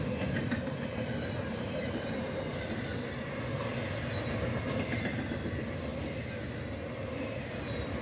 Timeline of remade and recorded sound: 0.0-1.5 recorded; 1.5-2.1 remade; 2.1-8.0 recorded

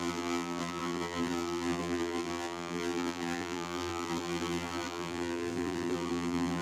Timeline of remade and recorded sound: 0.0-6.6 remade

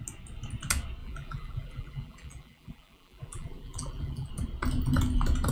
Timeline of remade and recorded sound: 0.0-1.0 recorded; 1.0-4.3 remade; 4.3-5.5 recorded